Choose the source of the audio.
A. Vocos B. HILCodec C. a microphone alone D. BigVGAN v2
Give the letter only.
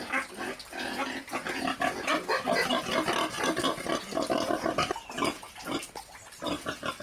C